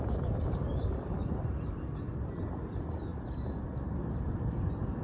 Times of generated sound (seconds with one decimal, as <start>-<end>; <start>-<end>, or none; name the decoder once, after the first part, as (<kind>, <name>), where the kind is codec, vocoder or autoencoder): none